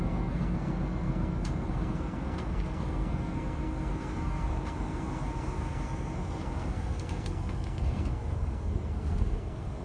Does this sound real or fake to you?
fake